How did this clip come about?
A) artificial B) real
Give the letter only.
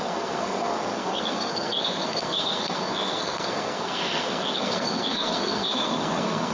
A